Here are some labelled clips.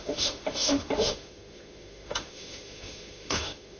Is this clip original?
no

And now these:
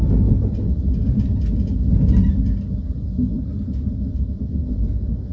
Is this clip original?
yes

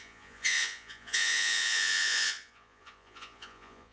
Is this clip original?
no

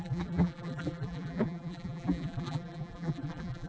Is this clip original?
no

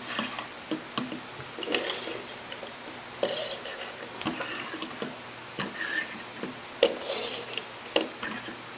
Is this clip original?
yes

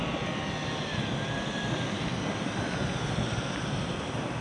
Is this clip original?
yes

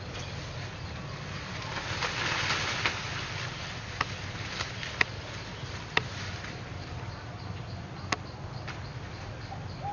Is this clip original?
yes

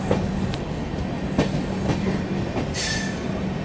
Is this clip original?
yes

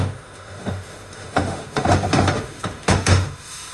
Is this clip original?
no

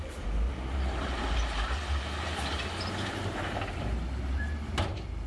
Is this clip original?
no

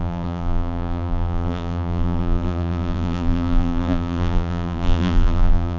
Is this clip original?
no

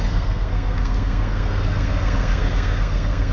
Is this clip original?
no